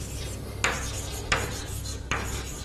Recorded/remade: recorded